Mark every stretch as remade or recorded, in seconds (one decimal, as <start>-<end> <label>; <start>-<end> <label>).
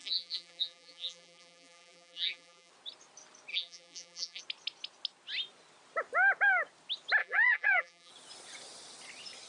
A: 0.0-2.7 remade; 2.7-3.5 recorded; 3.5-4.4 remade; 4.4-7.2 recorded; 7.2-8.1 remade; 8.1-9.5 recorded